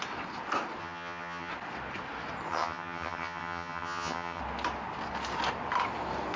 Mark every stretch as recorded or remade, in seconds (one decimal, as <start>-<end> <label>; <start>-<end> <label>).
0.0-0.8 recorded; 0.8-1.5 remade; 1.5-2.5 recorded; 2.5-4.4 remade; 4.4-6.4 recorded